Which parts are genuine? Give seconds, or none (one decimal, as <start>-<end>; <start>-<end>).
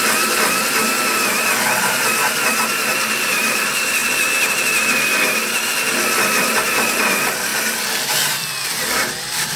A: 4.0-6.4; 7.5-8.6